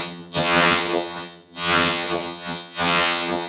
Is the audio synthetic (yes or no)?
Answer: yes